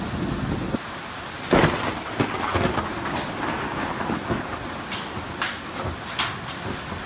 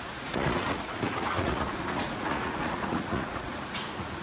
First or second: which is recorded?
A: first